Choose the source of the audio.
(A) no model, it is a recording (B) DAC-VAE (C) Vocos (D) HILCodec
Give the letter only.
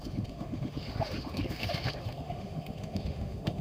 B